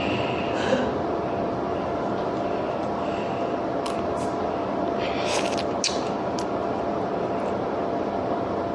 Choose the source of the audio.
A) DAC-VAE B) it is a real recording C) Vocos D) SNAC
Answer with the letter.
B